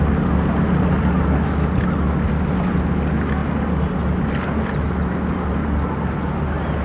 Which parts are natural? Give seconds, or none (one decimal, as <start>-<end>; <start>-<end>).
0.0-6.8